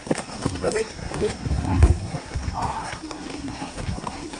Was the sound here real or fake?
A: fake